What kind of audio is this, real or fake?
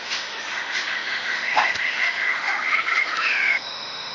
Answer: fake